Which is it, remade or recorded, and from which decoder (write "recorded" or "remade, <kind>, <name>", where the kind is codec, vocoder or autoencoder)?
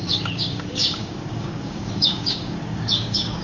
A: remade, codec, DAC